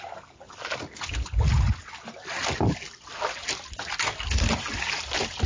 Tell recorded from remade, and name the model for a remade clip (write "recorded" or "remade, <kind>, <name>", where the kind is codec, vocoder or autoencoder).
recorded